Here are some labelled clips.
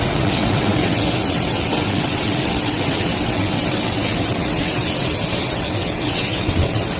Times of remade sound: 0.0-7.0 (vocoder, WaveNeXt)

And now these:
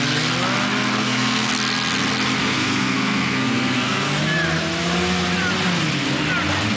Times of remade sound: 1.0-1.5 (codec, SNAC); 2.4-4.2